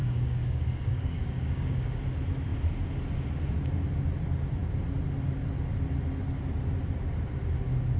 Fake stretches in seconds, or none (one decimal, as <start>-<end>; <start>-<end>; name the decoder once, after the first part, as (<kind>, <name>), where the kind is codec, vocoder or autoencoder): 0.0-2.0 (codec, DAC)